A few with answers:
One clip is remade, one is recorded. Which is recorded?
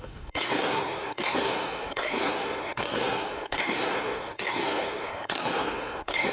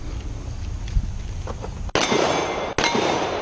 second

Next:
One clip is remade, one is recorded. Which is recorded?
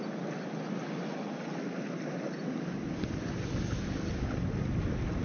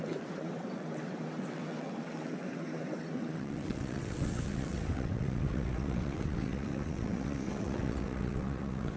first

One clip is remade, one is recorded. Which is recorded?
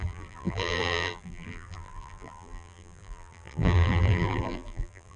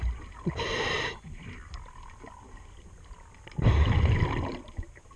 second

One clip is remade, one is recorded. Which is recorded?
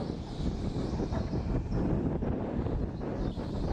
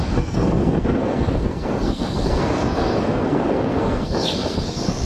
first